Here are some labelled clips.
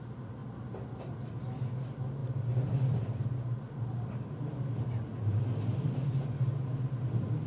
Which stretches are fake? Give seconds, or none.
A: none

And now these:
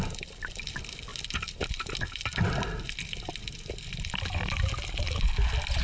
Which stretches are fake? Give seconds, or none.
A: none

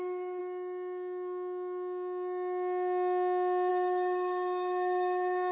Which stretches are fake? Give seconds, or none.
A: 0.0-0.4; 3.7-5.5

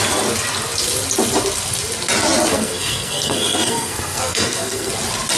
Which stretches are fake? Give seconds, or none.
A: 2.5-4.9

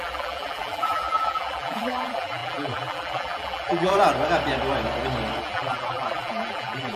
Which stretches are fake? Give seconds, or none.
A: 0.0-3.9; 5.4-7.0

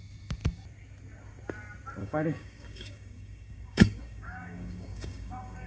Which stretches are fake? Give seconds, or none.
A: 2.0-5.7

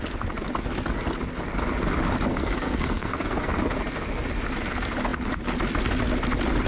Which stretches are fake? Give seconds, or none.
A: 2.3-3.5

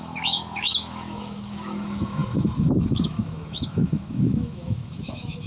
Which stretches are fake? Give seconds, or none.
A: 0.0-5.5